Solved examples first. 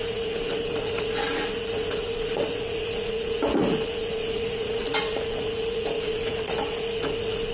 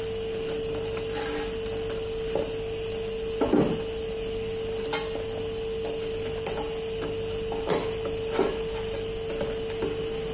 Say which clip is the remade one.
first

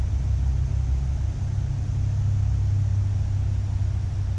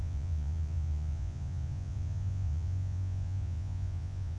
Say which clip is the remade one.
second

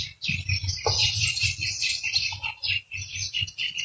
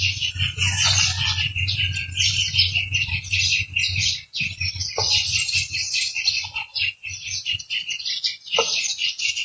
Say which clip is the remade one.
second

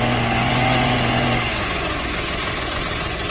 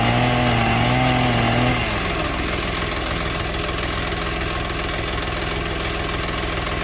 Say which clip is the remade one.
first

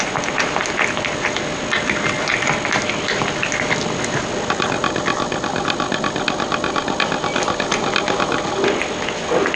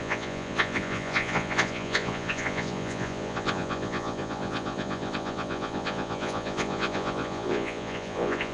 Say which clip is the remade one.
second